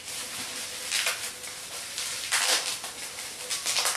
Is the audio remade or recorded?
recorded